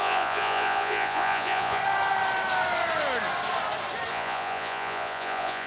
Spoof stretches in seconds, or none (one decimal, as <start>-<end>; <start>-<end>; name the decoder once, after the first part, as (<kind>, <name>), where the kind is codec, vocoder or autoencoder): 0.0-1.8 (vocoder, Vocos); 4.1-5.7